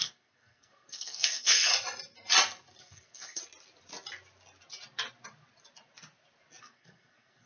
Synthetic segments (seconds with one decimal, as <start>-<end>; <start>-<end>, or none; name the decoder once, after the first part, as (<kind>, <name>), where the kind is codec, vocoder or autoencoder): 0.0-1.7 (codec, SNAC); 2.8-3.4; 6.6-7.5